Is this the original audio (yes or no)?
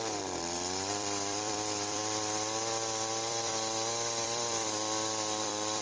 no